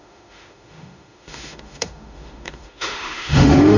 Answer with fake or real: fake